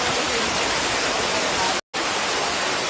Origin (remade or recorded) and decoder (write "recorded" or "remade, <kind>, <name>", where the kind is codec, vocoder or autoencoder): recorded